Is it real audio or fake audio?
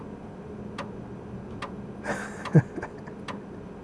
real